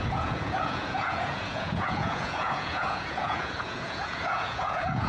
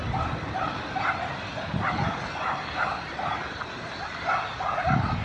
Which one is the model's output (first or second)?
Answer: first